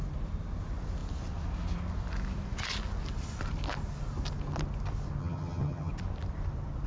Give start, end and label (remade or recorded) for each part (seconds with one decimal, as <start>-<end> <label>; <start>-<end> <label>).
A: 0.0-5.2 recorded; 5.2-5.9 remade; 5.9-6.9 recorded